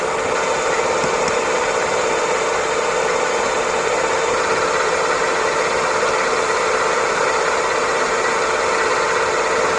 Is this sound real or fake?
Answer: fake